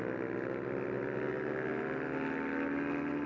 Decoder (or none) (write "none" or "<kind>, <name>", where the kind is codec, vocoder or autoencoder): none